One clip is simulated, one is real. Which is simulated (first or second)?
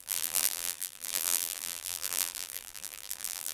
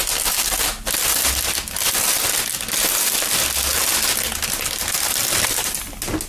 first